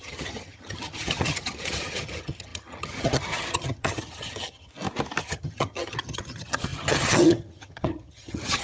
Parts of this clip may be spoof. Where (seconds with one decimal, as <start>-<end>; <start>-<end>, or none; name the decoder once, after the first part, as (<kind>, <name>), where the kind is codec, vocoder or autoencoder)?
0.0-4.7 (vocoder, HiFi-GAN); 5.2-8.6